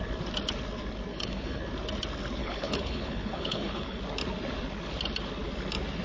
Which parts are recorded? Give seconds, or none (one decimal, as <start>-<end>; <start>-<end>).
0.0-1.1; 1.6-2.4; 4.0-6.0